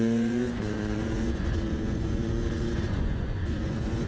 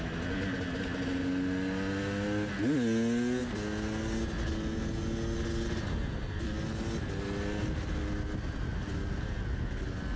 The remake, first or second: first